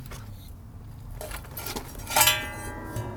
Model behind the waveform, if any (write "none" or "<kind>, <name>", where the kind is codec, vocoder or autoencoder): none